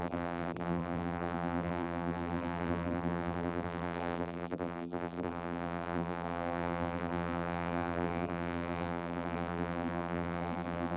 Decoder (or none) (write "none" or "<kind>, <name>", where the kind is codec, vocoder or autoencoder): vocoder, BigVGAN v2